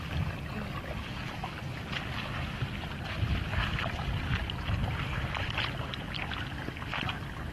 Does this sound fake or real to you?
real